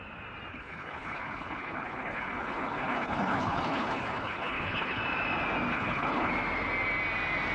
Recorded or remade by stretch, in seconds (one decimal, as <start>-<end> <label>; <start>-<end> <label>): 0.0-0.5 recorded; 0.5-5.0 remade; 5.0-5.7 recorded; 5.7-6.3 remade; 6.3-7.5 recorded

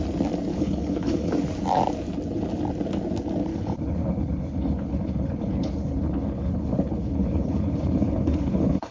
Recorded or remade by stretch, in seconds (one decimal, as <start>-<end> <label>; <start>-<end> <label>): 0.0-0.5 recorded; 0.5-1.3 remade; 1.3-3.5 recorded; 3.5-8.9 remade